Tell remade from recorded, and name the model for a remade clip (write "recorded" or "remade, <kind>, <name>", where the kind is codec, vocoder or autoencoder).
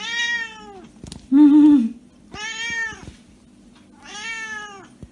recorded